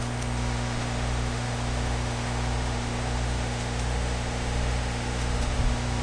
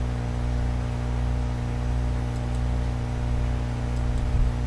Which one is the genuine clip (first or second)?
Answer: second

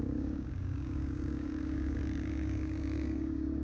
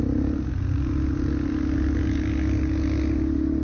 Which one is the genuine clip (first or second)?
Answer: second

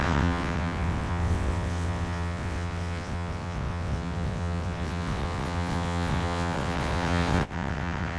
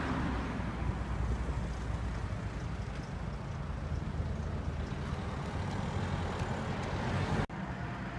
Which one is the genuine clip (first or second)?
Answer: second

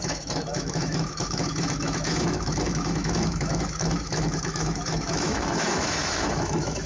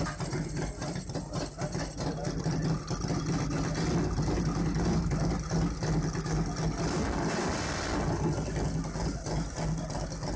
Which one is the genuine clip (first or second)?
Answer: second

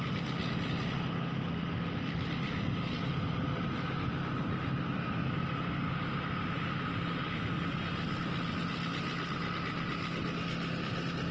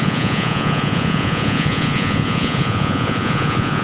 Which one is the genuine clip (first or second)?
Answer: first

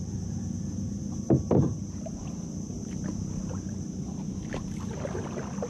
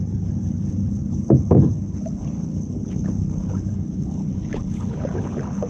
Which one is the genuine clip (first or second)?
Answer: first